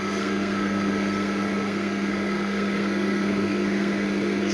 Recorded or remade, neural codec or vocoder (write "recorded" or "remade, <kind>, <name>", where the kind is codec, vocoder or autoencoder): remade, codec, SNAC